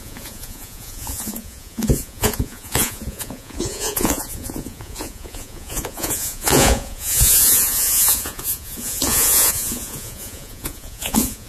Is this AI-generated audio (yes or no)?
yes